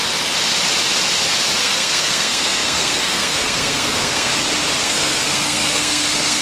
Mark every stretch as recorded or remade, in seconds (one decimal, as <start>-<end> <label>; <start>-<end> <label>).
0.0-1.6 recorded; 1.6-4.3 remade; 4.3-4.8 recorded; 4.8-6.4 remade